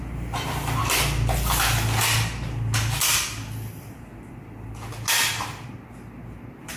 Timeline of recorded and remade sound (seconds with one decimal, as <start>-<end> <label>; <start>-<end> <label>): 0.0-6.8 recorded